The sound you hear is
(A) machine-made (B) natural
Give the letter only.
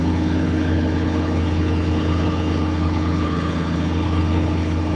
A